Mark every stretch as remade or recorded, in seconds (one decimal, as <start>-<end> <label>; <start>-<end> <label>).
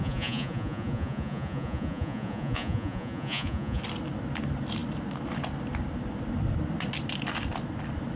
0.0-3.8 remade; 3.8-8.2 recorded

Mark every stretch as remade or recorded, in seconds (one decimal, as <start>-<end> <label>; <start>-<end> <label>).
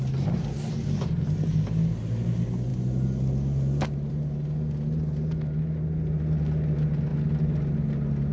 0.0-8.3 recorded